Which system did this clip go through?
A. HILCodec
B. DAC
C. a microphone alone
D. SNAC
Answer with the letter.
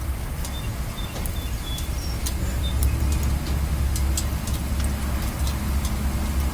C